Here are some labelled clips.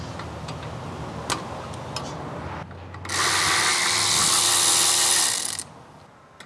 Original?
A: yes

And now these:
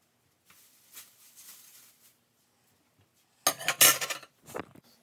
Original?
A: yes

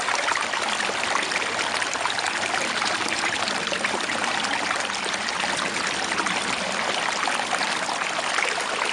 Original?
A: no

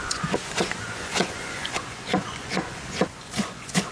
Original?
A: no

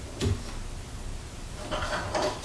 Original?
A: yes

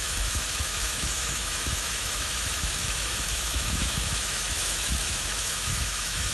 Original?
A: no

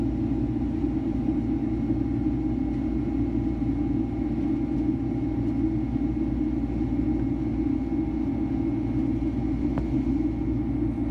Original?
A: yes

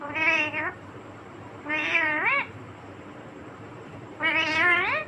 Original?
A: no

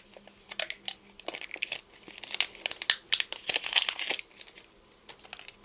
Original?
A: yes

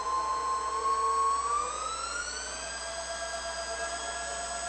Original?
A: yes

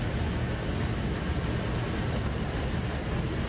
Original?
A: yes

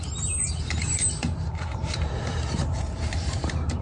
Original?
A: no